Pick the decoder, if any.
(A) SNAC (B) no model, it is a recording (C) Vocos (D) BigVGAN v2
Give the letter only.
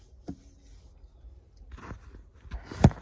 B